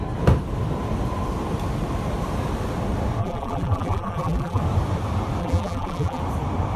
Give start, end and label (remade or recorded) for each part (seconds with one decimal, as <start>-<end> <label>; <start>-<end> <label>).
0.0-3.2 recorded; 3.2-4.6 remade; 4.6-5.4 recorded; 5.4-6.2 remade; 6.2-6.8 recorded

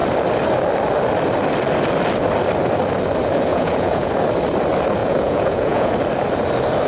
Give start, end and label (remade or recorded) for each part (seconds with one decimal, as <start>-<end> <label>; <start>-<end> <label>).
0.0-3.5 recorded; 3.5-4.1 remade; 4.1-5.0 recorded; 5.0-5.9 remade; 5.9-6.9 recorded

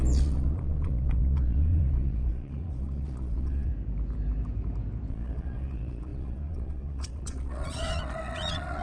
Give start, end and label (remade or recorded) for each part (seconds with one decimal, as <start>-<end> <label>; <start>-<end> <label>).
0.0-3.7 remade; 3.7-5.1 recorded; 5.1-8.8 remade

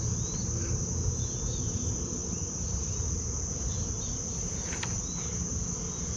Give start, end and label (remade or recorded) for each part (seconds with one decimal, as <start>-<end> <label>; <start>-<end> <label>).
0.0-6.2 recorded

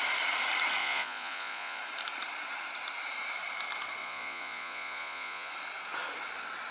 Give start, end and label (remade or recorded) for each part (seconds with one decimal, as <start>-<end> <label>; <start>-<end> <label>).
0.0-0.8 recorded; 0.8-1.8 remade; 1.8-4.0 recorded; 4.0-5.5 remade; 5.5-6.7 recorded

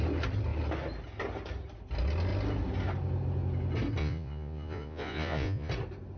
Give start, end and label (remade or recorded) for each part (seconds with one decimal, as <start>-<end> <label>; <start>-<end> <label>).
0.0-4.0 recorded; 4.0-5.7 remade; 5.7-6.2 recorded

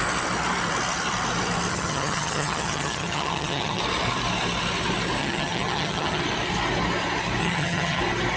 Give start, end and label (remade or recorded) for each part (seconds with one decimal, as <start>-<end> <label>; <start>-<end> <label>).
0.0-1.7 recorded; 1.7-3.8 remade; 3.8-5.2 recorded; 5.2-6.2 remade; 6.2-7.4 recorded; 7.4-8.0 remade; 8.0-8.4 recorded